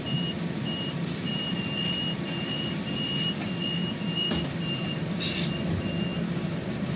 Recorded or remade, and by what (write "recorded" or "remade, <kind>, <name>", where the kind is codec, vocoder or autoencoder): remade, vocoder, BigVGAN v2